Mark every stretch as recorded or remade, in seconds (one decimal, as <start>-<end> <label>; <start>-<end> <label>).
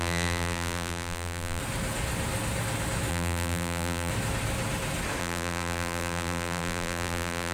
0.0-1.6 remade; 1.6-3.1 recorded; 3.1-4.1 remade; 4.1-5.2 recorded; 5.2-7.5 remade